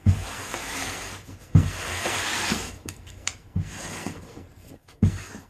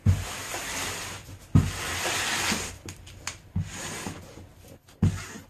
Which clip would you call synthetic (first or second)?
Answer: first